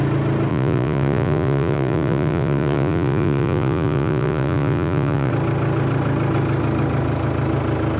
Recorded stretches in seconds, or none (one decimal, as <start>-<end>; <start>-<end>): 0.0-0.5; 5.3-8.0